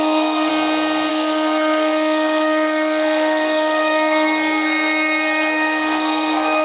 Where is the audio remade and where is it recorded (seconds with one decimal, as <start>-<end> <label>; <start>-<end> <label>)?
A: 0.0-0.5 remade; 0.5-1.1 recorded; 1.1-6.6 remade